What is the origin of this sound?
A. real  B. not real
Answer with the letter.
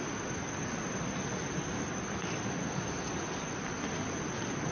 A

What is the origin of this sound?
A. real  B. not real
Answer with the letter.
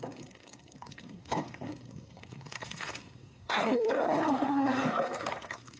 B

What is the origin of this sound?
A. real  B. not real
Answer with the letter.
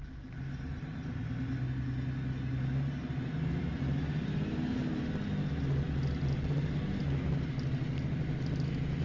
A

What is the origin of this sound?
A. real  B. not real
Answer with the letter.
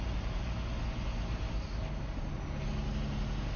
A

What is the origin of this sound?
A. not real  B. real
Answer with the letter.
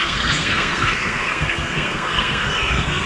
A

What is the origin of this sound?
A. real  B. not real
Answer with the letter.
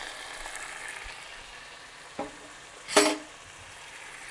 A